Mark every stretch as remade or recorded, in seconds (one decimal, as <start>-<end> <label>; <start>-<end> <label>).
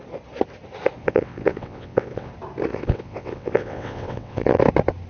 0.0-1.0 recorded; 1.0-2.3 remade; 2.3-2.7 recorded; 2.7-4.6 remade; 4.6-5.1 recorded